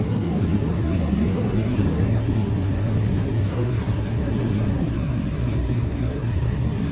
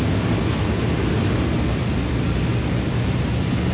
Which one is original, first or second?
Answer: second